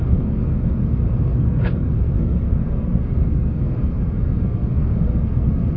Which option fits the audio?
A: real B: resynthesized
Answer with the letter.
B